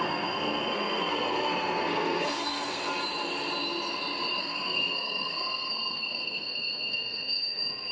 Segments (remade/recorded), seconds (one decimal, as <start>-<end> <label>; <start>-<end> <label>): 0.0-2.9 remade; 2.9-4.4 recorded; 4.4-7.9 remade